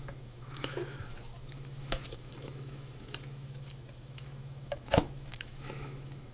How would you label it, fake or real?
fake